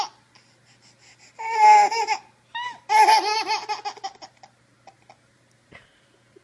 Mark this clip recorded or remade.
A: recorded